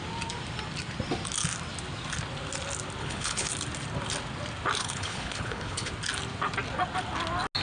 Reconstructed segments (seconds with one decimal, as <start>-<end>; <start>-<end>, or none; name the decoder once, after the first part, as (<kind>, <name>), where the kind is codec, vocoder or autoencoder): 3.0-3.5 (codec, HILCodec); 4.8-5.9